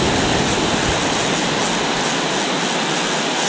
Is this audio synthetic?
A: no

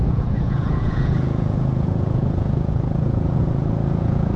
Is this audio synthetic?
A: yes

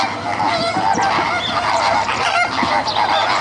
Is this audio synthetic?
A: yes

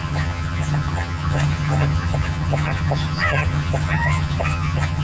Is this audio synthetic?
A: yes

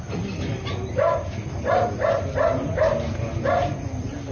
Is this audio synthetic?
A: no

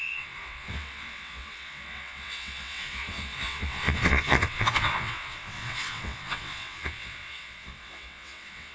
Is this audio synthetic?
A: yes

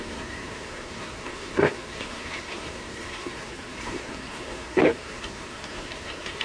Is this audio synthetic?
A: yes